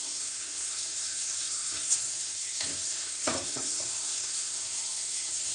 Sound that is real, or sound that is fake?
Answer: fake